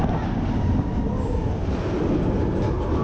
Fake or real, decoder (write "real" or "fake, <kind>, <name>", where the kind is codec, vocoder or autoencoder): real